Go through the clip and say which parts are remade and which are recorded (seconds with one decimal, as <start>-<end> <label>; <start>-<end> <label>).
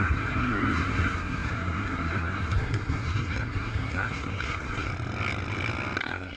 0.0-4.9 remade; 4.9-6.0 recorded; 6.0-6.4 remade